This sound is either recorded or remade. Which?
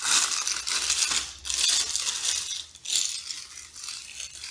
recorded